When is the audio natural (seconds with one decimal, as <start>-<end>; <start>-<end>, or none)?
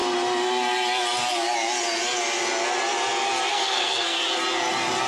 0.0-3.5; 4.2-5.1